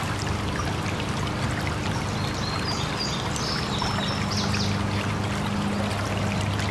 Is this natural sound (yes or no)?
yes